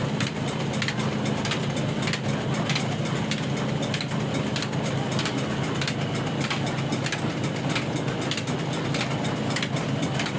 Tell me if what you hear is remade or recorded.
recorded